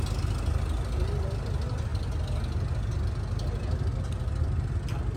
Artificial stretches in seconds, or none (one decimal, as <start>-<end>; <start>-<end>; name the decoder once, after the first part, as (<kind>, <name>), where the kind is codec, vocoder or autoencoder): 3.9-4.8 (vocoder, BigVGAN v2)